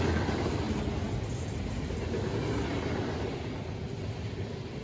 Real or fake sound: real